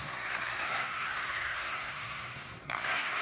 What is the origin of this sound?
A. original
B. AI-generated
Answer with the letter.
B